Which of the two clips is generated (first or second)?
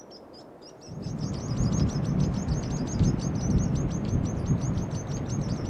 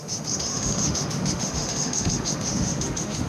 second